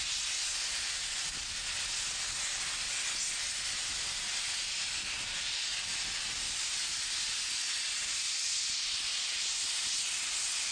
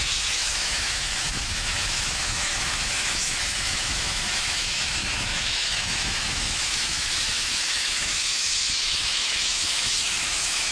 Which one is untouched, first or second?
first